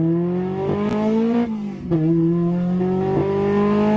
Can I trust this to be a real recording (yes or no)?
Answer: yes